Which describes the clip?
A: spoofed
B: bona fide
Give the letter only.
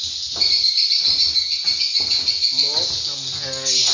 B